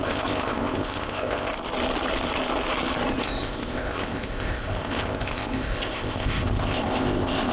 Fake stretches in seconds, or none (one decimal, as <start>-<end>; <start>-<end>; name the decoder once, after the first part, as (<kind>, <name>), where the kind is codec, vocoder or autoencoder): 0.0-1.5 (codec, ZipCodec); 3.2-7.5